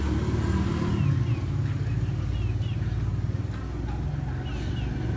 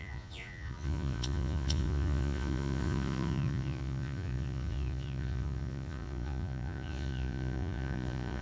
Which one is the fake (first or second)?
second